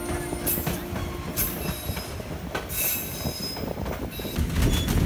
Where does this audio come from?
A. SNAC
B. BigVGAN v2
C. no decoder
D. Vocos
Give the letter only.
C